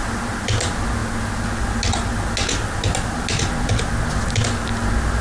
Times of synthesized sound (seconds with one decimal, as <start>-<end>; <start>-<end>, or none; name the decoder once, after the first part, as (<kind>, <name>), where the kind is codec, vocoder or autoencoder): none